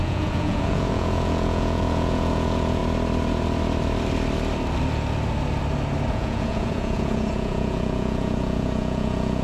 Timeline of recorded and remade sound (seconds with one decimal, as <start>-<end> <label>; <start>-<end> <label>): 0.0-2.8 remade; 2.8-6.1 recorded; 6.1-9.4 remade